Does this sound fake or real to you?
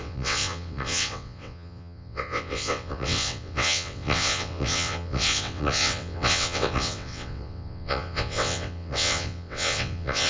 fake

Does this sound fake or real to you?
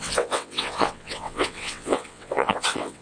fake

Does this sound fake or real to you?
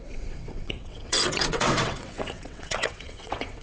fake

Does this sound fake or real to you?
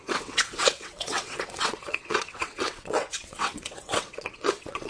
fake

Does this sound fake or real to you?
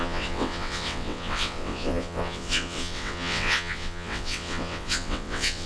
fake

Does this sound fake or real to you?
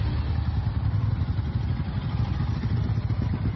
real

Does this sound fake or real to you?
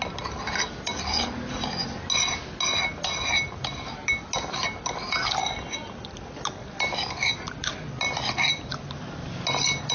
real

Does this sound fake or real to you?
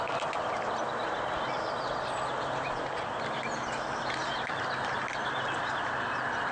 real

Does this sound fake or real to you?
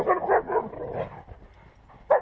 real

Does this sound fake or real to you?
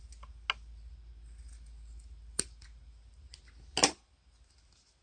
real